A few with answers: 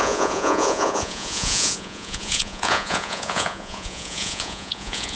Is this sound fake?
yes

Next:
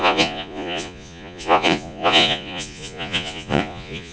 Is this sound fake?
yes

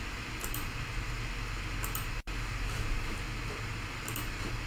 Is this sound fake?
no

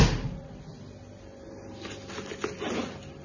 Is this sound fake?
no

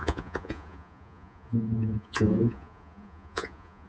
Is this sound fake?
yes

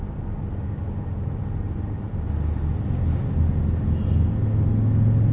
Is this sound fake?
no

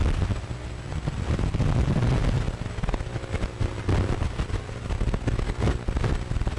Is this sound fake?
no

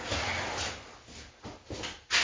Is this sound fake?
no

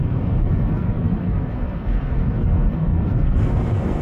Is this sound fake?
yes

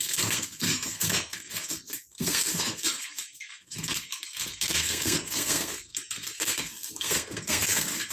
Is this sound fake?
yes